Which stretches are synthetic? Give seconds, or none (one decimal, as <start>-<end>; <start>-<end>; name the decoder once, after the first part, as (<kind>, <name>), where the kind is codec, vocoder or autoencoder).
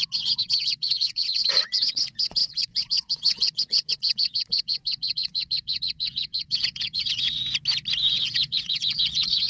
0.0-7.4 (vocoder, WaveNeXt); 8.1-9.5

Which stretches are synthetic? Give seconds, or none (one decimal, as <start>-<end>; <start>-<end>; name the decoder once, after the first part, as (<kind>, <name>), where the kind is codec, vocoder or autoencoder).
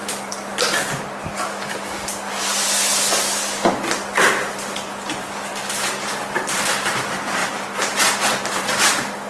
none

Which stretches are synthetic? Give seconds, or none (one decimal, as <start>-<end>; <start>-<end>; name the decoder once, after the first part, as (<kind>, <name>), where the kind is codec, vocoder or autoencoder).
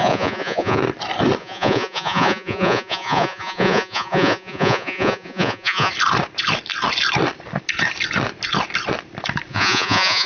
0.0-0.8 (vocoder, Vocos); 1.4-5.9; 9.5-10.3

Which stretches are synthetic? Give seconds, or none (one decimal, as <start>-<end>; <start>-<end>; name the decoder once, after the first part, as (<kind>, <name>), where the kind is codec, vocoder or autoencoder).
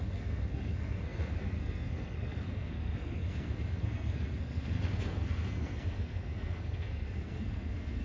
0.0-8.0 (codec, SNAC)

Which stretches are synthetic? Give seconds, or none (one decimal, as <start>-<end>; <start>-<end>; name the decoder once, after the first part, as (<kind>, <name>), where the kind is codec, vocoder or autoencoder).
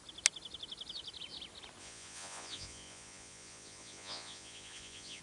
1.8-5.2 (vocoder, Vocos)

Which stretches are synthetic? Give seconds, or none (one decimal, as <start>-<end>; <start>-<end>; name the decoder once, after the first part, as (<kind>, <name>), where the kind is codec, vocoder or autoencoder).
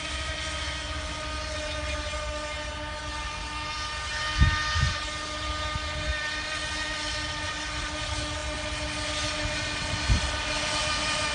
none